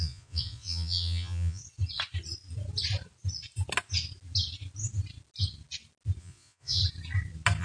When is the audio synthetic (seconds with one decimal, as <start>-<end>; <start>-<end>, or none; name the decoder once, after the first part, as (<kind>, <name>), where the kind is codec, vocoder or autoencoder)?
0.0-1.6 (vocoder, Vocos); 6.2-6.8